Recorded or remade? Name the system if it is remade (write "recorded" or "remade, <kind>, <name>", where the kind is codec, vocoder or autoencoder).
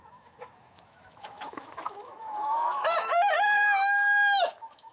remade, autoencoder, DAC-VAE